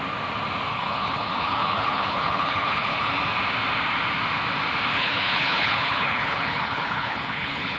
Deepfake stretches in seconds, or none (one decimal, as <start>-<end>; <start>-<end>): 0.7-3.1; 4.9-7.8